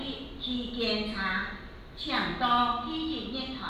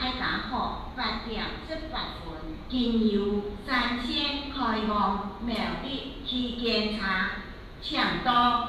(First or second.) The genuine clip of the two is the first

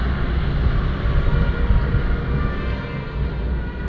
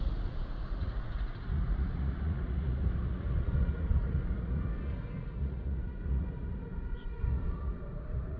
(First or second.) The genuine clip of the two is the first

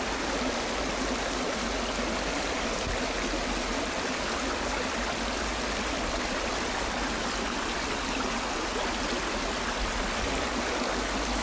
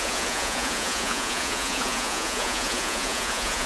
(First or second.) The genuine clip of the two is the first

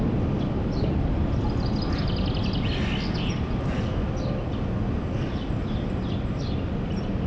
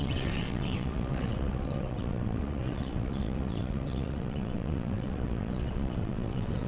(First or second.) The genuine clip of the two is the first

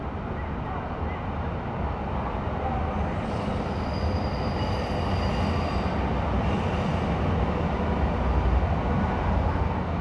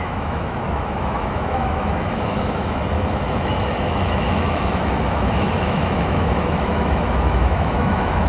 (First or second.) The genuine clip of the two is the first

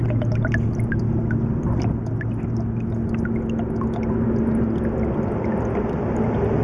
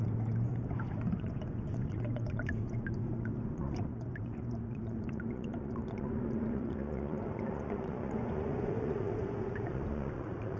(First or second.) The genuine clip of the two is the first